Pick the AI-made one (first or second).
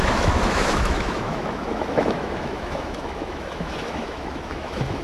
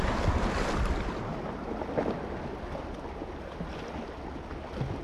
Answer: first